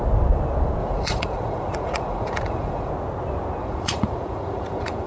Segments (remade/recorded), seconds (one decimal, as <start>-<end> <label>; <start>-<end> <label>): 0.0-0.8 recorded; 0.8-2.9 remade; 2.9-3.6 recorded; 3.6-5.1 remade